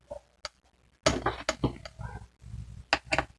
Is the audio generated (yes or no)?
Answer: no